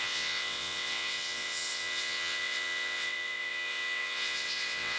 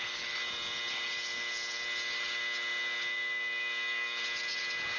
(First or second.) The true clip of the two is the second